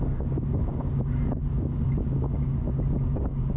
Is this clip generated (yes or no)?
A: yes